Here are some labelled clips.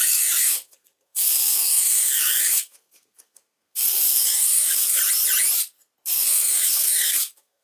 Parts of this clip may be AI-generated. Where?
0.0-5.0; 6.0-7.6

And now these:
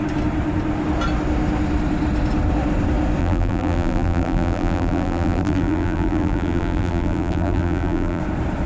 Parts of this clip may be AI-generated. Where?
3.2-8.2

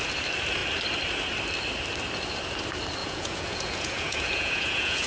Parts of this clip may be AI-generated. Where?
3.0-5.1

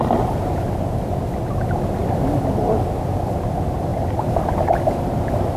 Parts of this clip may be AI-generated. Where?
2.0-2.8; 3.9-5.6

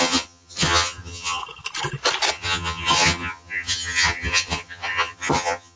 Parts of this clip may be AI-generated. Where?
0.0-1.4; 2.3-5.8

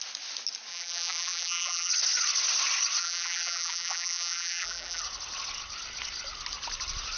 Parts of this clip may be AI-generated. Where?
0.7-1.9; 3.0-5.0

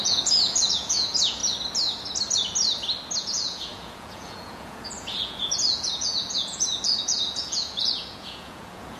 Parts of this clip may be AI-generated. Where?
0.0-1.4; 3.2-9.0

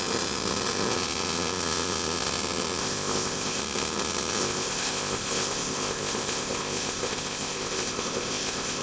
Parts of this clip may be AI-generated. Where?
2.8-3.6; 4.4-8.8